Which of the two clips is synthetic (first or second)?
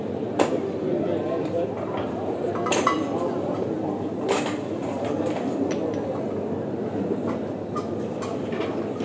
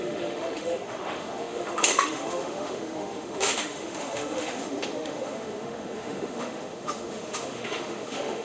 second